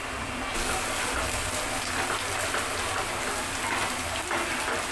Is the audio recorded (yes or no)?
yes